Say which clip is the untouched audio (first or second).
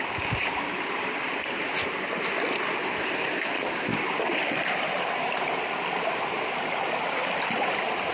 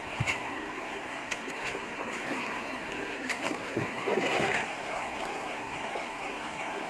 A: first